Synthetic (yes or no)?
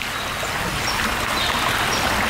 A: no